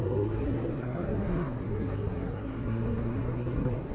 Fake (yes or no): yes